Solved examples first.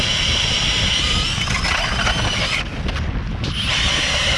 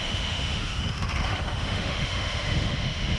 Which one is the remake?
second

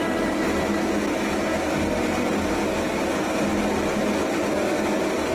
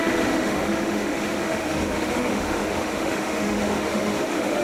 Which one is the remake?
second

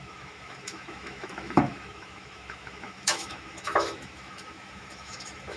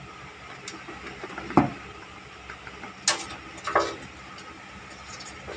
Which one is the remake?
first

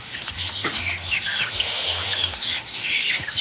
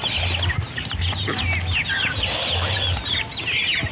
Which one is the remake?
first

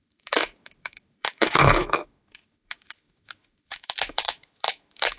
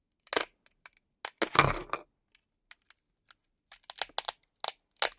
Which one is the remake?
first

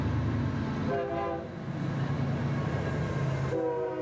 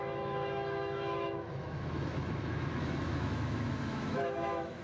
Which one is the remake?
second